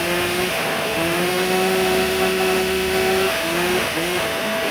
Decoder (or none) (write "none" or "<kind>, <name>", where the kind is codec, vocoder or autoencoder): autoencoder, DAC-VAE